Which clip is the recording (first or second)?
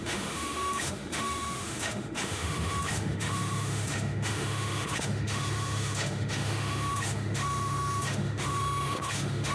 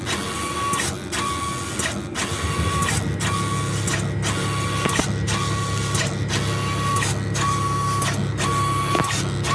second